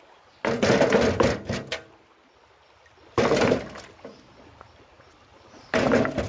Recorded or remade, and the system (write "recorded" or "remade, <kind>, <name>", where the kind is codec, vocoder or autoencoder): recorded